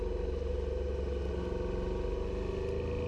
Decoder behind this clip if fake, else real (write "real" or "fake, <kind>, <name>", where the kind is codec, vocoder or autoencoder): real